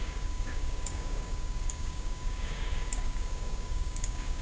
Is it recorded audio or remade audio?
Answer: remade